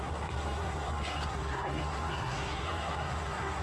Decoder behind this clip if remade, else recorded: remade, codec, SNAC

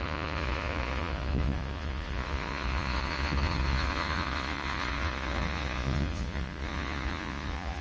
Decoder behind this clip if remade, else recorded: remade, vocoder, Vocos